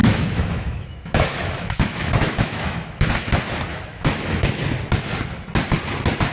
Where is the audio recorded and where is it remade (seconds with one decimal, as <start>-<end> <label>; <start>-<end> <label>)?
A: 0.0-3.1 remade; 3.1-3.7 recorded; 3.7-4.6 remade; 4.6-6.3 recorded